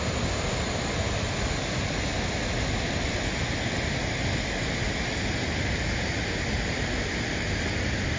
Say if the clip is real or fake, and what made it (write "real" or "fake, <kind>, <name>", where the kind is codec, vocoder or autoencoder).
real